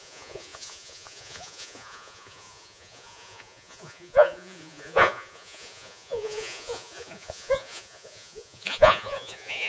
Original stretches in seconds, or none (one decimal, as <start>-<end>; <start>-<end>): none